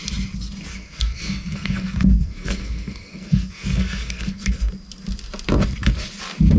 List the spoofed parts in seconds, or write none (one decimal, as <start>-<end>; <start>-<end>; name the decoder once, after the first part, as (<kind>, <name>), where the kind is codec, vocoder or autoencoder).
0.7-4.7 (codec, SNAC)